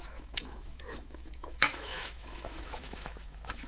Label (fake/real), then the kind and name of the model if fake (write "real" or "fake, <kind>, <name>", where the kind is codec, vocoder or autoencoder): fake, autoencoder, DAC-VAE